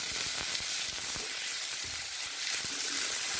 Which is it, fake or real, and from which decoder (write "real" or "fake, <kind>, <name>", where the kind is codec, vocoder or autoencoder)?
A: fake, vocoder, BigVGAN v2